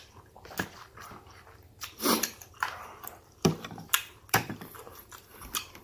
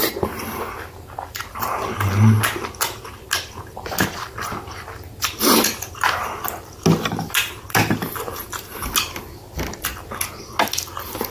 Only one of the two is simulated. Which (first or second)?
first